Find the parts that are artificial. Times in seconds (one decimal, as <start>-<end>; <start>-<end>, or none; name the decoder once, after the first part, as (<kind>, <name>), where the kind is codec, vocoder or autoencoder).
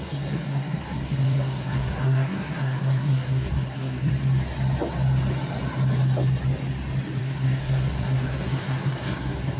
0.0-4.1 (codec, SNAC); 7.2-9.6